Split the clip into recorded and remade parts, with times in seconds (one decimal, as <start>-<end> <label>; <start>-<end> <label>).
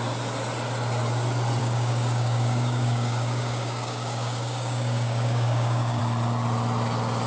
0.0-1.6 recorded; 1.6-6.0 remade; 6.0-7.3 recorded